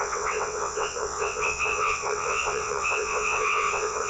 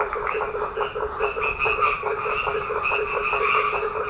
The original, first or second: second